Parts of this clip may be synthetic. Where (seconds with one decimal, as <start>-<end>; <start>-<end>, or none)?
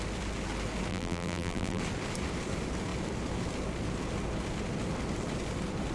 0.9-1.8